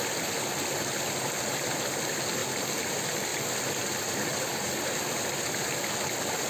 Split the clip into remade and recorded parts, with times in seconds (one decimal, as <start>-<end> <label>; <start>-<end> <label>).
0.0-6.5 recorded